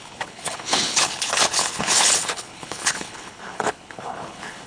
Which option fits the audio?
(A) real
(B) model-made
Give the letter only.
B